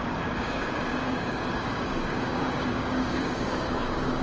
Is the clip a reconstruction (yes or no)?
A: yes